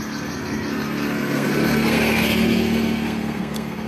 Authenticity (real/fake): fake